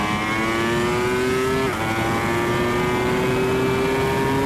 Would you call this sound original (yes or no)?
yes